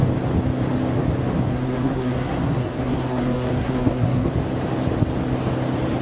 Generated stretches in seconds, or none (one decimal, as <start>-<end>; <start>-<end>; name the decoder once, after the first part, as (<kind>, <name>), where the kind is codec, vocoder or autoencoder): 1.5-4.3 (codec, SNAC)